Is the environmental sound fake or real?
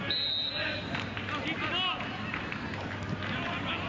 real